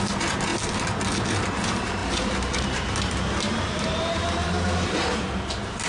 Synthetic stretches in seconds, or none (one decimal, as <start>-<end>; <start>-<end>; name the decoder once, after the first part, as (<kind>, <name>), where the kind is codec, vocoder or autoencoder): 0.0-0.5 (vocoder, BigVGAN v2); 1.5-5.9